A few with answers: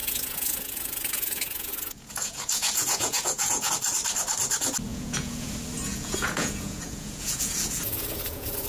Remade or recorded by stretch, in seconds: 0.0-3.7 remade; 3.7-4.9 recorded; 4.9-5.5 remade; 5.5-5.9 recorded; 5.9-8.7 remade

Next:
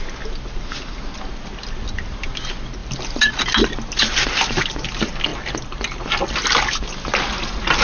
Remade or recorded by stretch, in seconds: 0.0-7.8 recorded

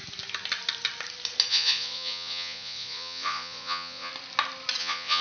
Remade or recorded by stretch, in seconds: 0.0-1.5 recorded; 1.5-4.1 remade; 4.1-4.8 recorded; 4.8-5.2 remade

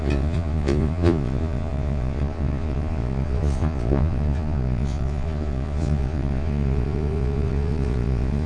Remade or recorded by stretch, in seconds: 0.0-8.5 remade

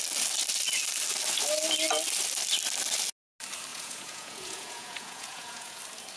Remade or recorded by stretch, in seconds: 0.0-3.7 recorded; 3.7-5.8 remade; 5.8-6.2 recorded